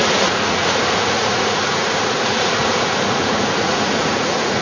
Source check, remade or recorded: remade